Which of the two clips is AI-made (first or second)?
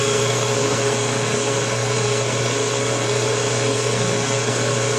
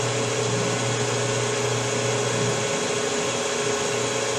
first